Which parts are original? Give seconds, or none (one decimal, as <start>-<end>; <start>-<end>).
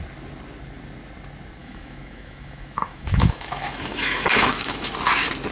0.0-1.6; 4.9-5.5